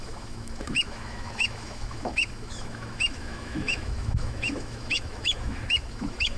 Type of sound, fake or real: fake